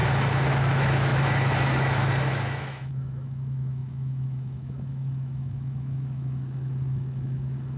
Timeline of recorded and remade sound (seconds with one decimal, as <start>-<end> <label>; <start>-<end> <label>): 0.0-0.5 recorded; 0.5-7.8 remade